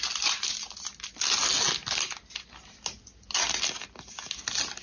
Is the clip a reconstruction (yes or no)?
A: no